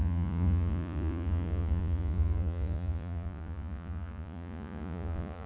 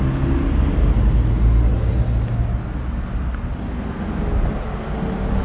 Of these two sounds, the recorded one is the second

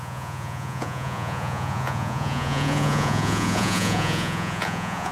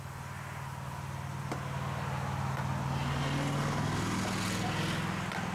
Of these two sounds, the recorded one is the second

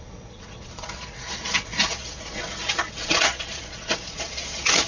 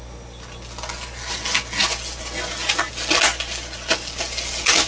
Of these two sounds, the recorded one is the second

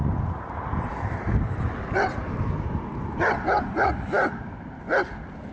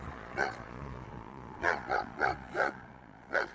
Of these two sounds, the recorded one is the first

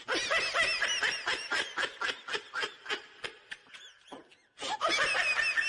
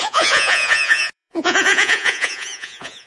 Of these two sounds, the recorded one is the first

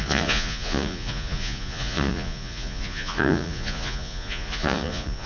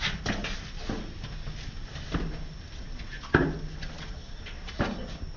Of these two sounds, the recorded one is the second